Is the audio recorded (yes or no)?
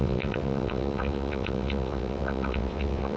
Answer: no